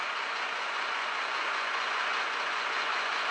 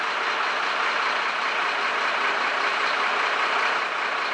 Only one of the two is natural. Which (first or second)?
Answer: second